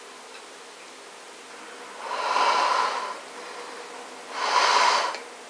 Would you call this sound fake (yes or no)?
no